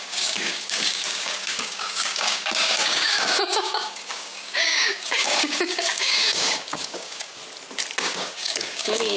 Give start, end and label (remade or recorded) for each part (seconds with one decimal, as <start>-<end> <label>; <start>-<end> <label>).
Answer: 0.0-7.4 remade; 7.4-8.0 recorded; 8.0-9.2 remade

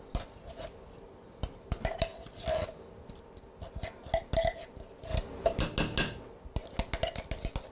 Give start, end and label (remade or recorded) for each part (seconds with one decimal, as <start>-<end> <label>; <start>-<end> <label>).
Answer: 0.0-7.7 recorded

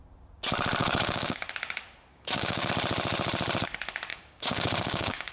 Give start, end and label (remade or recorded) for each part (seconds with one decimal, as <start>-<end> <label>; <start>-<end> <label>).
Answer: 0.0-0.8 recorded; 0.8-1.4 remade; 1.4-2.1 recorded; 2.1-2.7 remade; 2.7-4.1 recorded; 4.1-5.3 remade

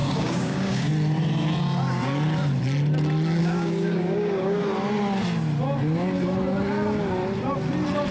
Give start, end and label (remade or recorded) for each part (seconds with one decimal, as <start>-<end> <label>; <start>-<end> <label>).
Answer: 0.0-0.9 remade; 0.9-3.4 recorded; 3.4-4.6 remade; 4.6-8.1 recorded

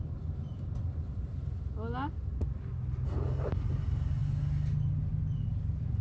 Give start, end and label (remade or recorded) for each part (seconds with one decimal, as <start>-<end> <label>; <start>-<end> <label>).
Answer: 0.0-6.0 recorded

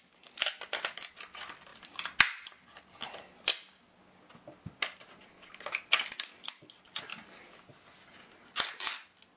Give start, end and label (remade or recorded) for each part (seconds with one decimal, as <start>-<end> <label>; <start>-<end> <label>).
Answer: 0.0-9.4 recorded

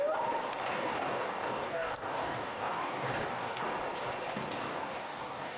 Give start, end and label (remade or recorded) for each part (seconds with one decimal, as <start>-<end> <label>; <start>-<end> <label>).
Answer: 0.0-0.7 recorded; 0.7-3.6 remade; 3.6-4.7 recorded; 4.7-5.6 remade